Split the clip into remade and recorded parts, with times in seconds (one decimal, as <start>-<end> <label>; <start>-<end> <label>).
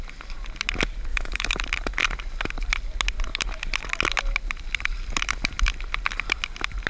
0.0-1.1 recorded; 1.1-1.6 remade; 1.6-6.9 recorded